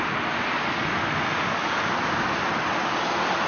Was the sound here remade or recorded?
recorded